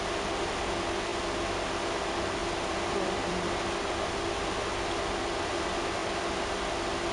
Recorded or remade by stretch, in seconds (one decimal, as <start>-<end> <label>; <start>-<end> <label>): 0.0-2.4 recorded; 2.4-4.6 remade; 4.6-6.0 recorded; 6.0-6.5 remade; 6.5-7.1 recorded